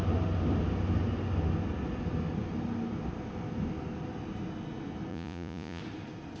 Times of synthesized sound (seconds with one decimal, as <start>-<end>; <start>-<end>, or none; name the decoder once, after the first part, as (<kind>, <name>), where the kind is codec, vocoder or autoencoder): 5.1-5.8 (vocoder, Vocos)